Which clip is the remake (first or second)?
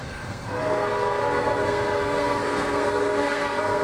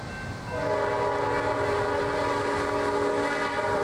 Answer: first